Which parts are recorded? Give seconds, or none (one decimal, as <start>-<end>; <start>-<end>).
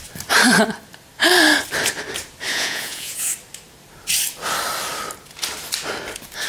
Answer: 0.0-2.5; 3.3-6.5